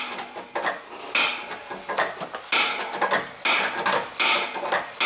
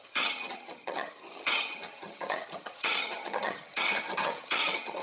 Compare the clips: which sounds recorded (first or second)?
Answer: first